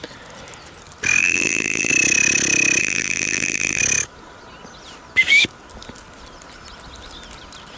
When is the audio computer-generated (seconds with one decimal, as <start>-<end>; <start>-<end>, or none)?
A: 1.2-1.9; 2.8-3.8